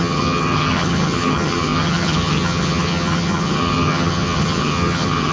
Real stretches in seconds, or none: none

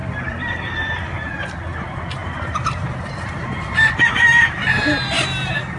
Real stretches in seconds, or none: 1.3-2.2; 4.4-5.8

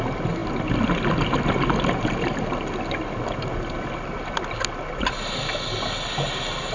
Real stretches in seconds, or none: 0.0-6.7

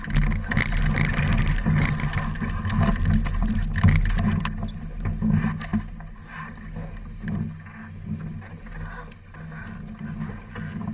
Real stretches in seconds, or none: 0.0-10.9

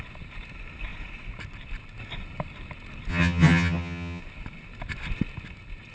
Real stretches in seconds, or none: 0.0-3.1; 4.2-5.9